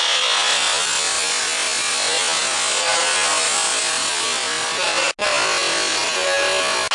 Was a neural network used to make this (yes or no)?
no